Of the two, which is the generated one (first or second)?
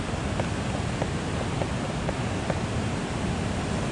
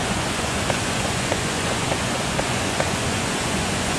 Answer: second